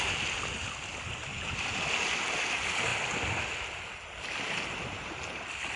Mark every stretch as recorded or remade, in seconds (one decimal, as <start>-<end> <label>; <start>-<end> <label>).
0.0-1.3 recorded; 1.3-1.8 remade; 1.8-5.8 recorded